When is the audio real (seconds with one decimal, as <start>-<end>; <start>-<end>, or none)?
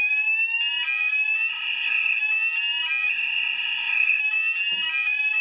0.0-1.5; 2.2-3.1; 4.2-5.4